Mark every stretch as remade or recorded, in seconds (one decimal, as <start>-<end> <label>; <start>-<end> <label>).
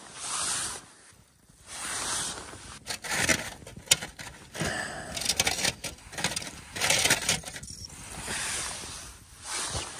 0.0-10.0 recorded